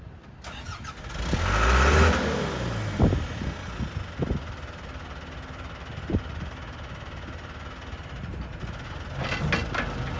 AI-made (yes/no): no